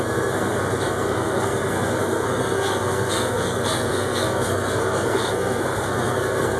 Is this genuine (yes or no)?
no